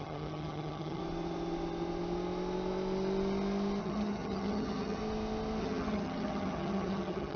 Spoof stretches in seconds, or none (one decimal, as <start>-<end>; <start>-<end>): 0.0-1.0; 3.8-5.0; 5.6-7.4